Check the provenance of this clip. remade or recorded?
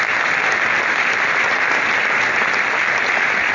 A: remade